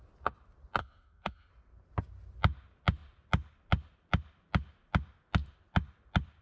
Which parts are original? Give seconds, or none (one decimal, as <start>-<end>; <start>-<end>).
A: 0.0-0.8; 1.5-6.4